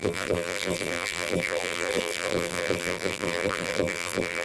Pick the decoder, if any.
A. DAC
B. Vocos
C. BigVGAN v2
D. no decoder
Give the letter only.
C